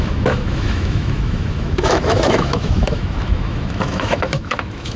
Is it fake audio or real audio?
fake